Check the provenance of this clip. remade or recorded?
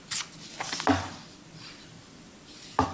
recorded